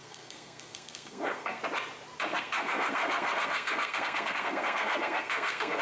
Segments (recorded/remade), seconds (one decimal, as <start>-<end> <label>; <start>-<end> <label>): 0.0-1.6 remade; 1.6-2.3 recorded; 2.3-5.8 remade